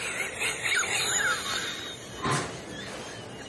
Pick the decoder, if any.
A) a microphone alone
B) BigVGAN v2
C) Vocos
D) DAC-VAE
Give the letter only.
A